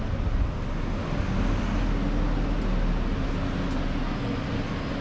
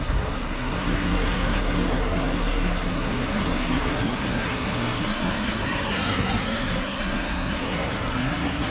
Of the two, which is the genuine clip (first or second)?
first